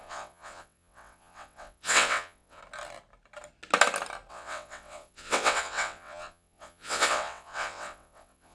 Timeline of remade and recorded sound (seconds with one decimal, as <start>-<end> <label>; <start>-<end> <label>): 0.0-2.6 remade; 2.6-4.3 recorded; 4.3-8.5 remade